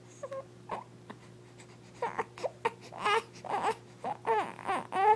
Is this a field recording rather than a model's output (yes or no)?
yes